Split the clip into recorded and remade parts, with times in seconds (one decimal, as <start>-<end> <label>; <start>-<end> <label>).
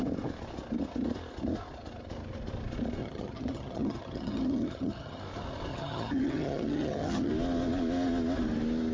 0.0-3.0 recorded; 3.0-5.2 remade; 5.2-5.7 recorded; 5.7-7.3 remade; 7.3-8.9 recorded